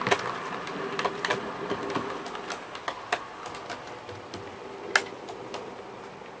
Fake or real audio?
real